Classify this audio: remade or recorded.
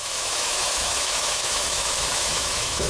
remade